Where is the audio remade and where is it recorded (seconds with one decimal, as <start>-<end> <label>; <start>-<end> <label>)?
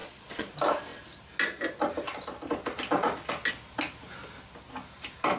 0.0-0.5 remade; 0.5-5.4 recorded